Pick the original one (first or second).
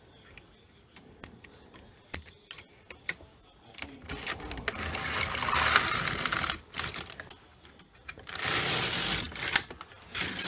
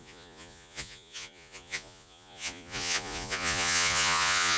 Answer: first